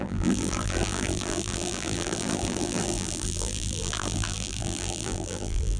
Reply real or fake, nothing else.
fake